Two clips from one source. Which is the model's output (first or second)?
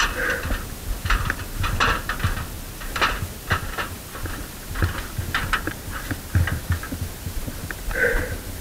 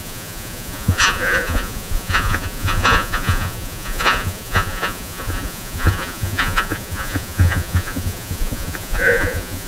second